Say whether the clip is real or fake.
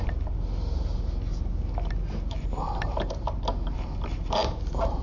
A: real